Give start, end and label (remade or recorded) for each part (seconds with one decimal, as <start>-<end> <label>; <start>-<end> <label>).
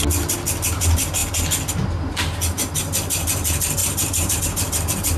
0.0-3.8 recorded; 3.8-4.4 remade; 4.4-5.2 recorded